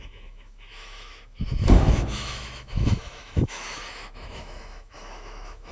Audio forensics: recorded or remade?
remade